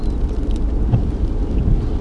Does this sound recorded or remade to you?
recorded